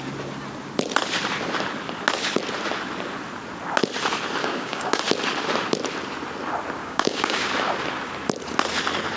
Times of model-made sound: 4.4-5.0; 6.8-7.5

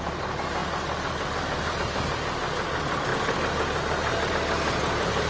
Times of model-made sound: none

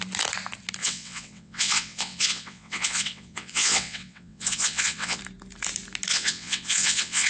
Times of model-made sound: 0.8-5.2; 6.1-7.3

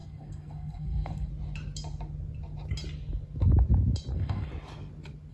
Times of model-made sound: 0.0-1.3; 4.1-4.5

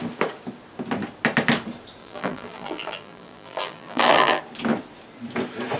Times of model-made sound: 2.0-4.4